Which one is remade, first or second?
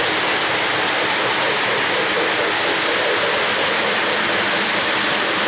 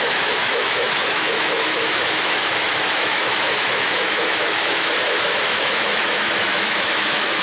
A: second